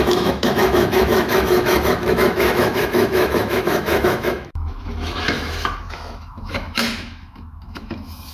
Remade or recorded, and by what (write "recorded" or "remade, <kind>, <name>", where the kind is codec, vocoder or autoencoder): remade, autoencoder, DAC-VAE